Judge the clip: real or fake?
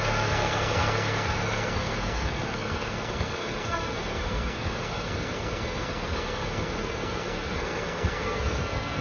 fake